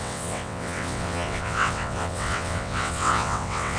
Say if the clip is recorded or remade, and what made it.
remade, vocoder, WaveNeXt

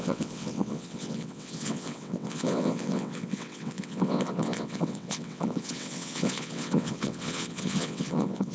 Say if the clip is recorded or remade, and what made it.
remade, vocoder, WaveNeXt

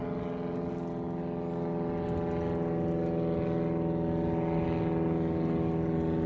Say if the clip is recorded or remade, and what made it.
recorded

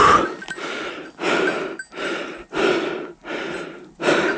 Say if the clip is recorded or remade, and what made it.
recorded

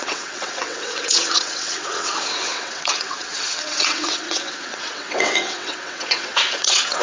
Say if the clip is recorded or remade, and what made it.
remade, vocoder, WaveNeXt